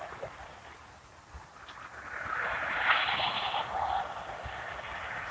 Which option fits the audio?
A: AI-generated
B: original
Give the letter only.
B